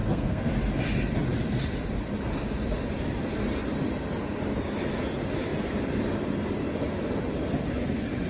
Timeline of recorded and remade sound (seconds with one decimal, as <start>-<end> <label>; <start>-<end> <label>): 0.0-0.5 remade; 0.5-8.3 recorded